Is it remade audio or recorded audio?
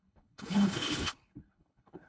remade